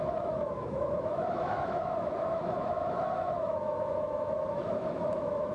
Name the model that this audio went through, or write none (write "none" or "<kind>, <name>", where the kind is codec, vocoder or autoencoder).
autoencoder, DAC-VAE